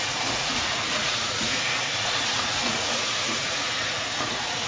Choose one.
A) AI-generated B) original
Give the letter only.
A